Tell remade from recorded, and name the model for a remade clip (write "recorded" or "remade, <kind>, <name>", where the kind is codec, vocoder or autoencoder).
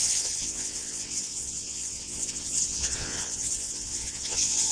remade, vocoder, WaveNeXt